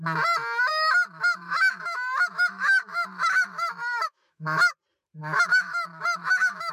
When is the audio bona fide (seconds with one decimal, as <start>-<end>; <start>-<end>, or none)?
0.0-0.7; 4.7-5.2